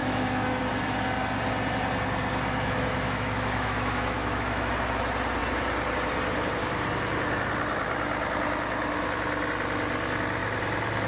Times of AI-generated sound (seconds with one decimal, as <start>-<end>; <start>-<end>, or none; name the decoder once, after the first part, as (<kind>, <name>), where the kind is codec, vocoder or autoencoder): 0.0-0.6 (autoencoder, DAC-VAE); 2.5-4.7